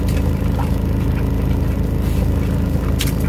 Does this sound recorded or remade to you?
recorded